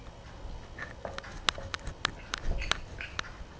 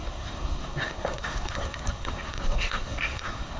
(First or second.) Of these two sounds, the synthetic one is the second